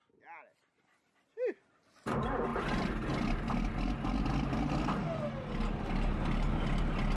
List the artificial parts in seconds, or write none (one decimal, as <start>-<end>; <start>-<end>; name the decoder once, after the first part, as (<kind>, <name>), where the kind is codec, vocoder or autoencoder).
none